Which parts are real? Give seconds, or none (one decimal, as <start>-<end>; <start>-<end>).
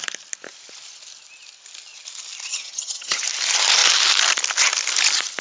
0.0-2.5; 3.2-5.4